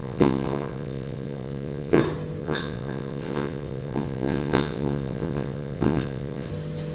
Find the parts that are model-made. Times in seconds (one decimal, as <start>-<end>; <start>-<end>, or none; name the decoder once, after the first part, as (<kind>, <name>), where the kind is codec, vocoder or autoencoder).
0.0-2.0 (vocoder, WaveNeXt); 2.4-6.5

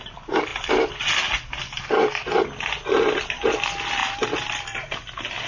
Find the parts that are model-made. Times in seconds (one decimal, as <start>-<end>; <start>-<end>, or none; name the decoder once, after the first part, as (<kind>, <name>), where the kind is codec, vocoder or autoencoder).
none